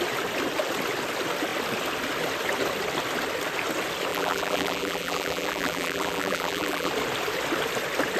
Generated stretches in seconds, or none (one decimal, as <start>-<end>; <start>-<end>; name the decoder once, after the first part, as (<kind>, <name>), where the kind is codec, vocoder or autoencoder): 4.1-6.9 (vocoder, BigVGAN v2)